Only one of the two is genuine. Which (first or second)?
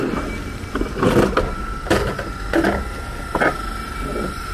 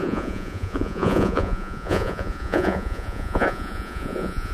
first